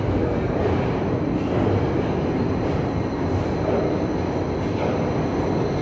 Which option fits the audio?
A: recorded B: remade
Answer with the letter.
A